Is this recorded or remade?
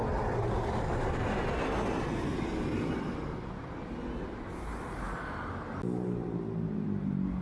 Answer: recorded